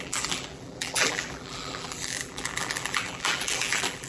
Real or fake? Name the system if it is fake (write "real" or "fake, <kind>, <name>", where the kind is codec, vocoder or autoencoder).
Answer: fake, vocoder, BigVGAN v2